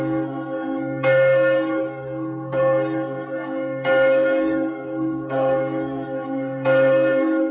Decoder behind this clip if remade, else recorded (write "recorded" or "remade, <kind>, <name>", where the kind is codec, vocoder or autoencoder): remade, codec, SNAC